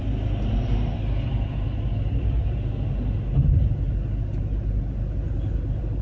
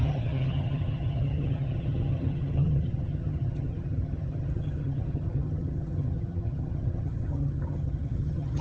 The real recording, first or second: first